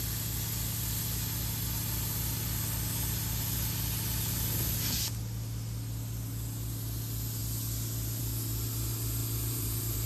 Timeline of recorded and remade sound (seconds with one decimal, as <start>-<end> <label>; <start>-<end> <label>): 0.0-9.2 recorded; 9.2-10.1 remade